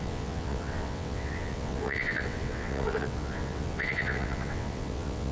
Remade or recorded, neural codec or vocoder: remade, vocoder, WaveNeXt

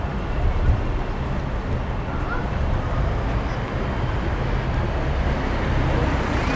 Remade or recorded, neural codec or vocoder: recorded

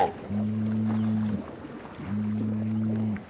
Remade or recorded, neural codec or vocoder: recorded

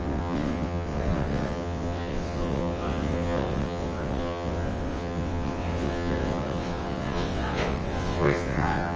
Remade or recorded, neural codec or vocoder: remade, vocoder, WaveNeXt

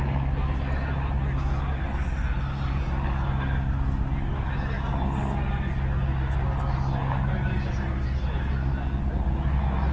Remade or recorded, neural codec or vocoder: recorded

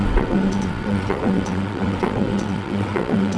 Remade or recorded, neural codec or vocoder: remade, vocoder, WaveNeXt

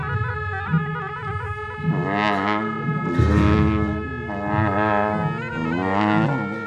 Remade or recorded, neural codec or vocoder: recorded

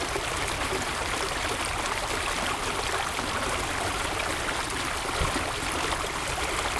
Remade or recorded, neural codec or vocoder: recorded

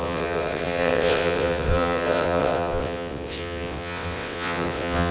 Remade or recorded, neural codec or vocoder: remade, vocoder, WaveNeXt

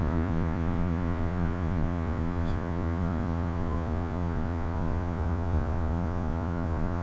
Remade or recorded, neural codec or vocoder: remade, vocoder, Vocos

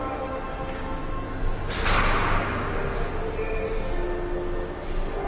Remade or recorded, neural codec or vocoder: recorded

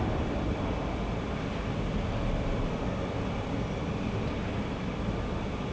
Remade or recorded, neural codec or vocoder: recorded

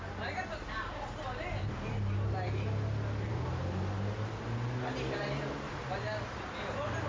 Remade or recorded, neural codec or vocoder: recorded